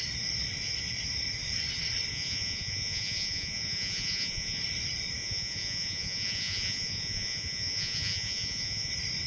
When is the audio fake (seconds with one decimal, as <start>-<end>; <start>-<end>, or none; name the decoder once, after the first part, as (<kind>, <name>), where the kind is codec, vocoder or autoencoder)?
2.1-4.6 (vocoder, Vocos); 5.2-8.9